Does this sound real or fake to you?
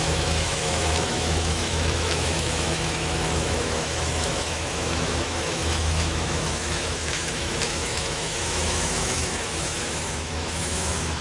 fake